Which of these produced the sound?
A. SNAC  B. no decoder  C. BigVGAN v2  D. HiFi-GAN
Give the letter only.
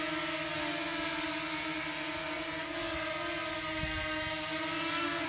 B